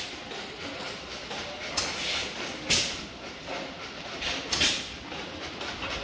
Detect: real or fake real